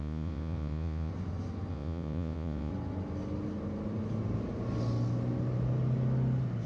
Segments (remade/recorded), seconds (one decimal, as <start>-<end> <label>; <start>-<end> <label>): 0.0-1.1 remade; 1.1-1.7 recorded; 1.7-2.7 remade; 2.7-6.7 recorded